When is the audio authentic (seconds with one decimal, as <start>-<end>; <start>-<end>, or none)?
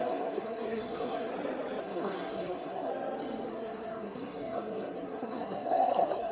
1.3-1.8; 2.9-3.5